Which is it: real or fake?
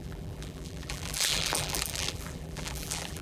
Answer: fake